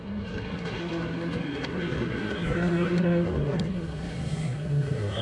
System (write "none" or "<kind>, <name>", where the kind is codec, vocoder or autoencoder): codec, SNAC